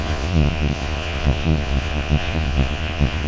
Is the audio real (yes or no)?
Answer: no